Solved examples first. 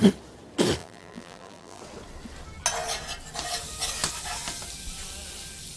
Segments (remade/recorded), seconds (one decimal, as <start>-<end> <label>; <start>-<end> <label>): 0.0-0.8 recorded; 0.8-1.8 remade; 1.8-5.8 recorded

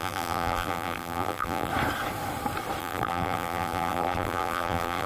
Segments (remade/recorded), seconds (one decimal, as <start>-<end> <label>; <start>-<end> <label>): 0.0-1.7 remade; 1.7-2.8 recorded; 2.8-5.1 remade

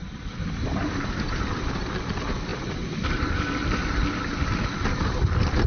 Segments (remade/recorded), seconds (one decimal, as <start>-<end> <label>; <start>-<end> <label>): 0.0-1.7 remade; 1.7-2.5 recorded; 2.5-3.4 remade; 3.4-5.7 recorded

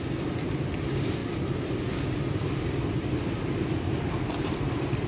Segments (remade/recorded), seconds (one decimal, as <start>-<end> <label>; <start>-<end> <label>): 0.0-1.2 remade; 1.2-4.3 recorded; 4.3-5.1 remade

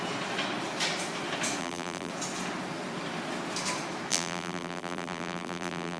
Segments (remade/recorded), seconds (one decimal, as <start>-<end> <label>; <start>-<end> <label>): 0.0-1.6 recorded; 1.6-2.1 remade; 2.1-4.1 recorded; 4.1-6.0 remade